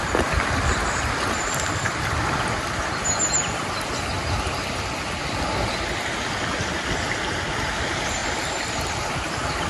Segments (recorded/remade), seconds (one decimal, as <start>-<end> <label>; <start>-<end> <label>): 0.0-8.2 recorded; 8.2-9.7 remade